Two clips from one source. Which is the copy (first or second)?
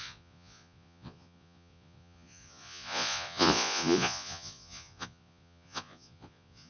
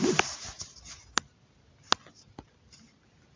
first